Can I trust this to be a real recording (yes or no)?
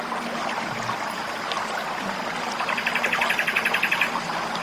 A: yes